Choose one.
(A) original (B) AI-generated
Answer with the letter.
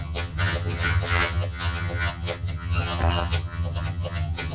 B